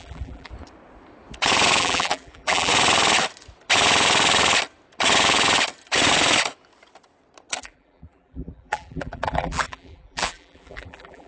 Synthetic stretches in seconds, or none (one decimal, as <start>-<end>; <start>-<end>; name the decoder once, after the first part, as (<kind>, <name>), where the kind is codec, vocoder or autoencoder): 0.0-0.5 (vocoder, BigVGAN v2); 1.8-2.7; 7.6-11.3